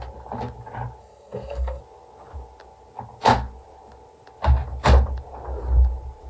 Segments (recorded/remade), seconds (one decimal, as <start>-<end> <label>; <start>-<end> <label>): 0.0-1.0 recorded; 1.0-1.8 remade; 1.8-6.3 recorded